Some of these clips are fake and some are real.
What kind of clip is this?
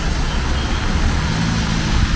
real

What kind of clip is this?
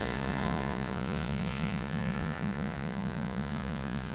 fake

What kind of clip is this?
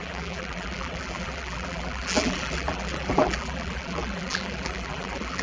fake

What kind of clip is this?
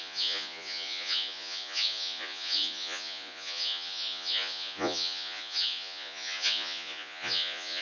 fake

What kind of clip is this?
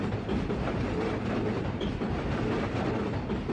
real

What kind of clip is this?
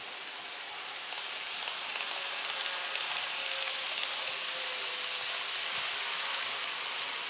real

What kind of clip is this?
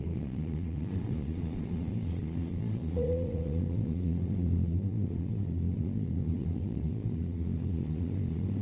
fake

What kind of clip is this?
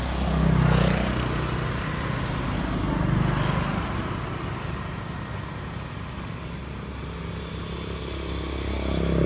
real